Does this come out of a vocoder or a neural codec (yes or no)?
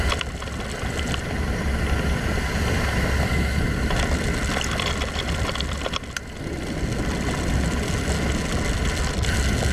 no